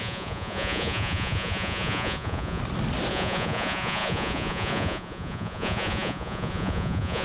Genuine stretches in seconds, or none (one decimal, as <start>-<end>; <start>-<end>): 2.6-3.1